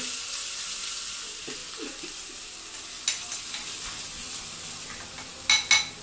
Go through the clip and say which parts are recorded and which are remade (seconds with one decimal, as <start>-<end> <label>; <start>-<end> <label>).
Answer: 0.0-6.0 recorded